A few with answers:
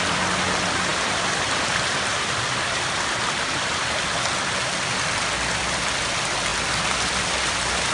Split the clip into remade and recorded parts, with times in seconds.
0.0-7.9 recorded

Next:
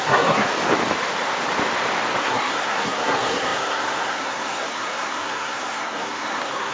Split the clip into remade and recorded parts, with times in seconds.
0.0-0.5 remade; 0.5-2.2 recorded; 2.2-6.7 remade

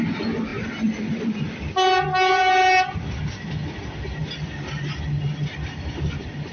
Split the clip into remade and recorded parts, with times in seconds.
0.0-6.5 recorded

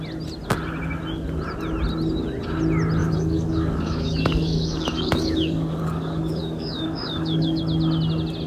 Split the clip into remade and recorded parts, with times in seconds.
0.0-3.0 recorded; 3.0-7.6 remade; 7.6-8.5 recorded

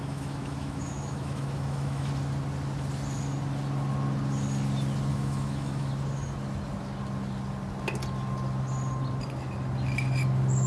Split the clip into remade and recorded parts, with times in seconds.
0.0-2.1 remade; 2.1-5.1 recorded; 5.1-5.9 remade; 5.9-10.7 recorded

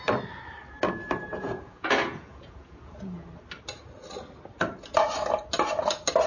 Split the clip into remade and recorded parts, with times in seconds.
0.0-1.3 recorded; 1.3-3.3 remade; 3.3-6.3 recorded

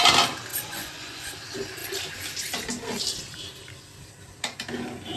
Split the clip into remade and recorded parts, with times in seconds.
0.0-0.5 recorded; 0.5-1.3 remade; 1.3-5.2 recorded

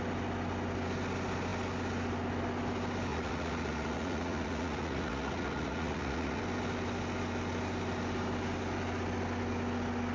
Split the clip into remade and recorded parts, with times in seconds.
0.0-3.1 recorded; 3.1-6.4 remade; 6.4-10.1 recorded